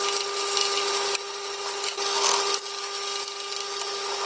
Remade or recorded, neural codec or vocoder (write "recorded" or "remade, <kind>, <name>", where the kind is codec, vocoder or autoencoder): recorded